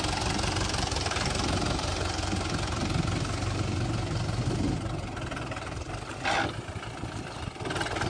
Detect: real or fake real